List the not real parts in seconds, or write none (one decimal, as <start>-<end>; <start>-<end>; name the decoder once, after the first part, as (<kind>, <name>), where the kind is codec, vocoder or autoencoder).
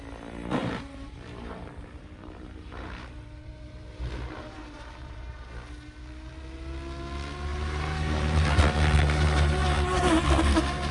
0.6-5.5 (vocoder, BigVGAN v2); 7.5-8.6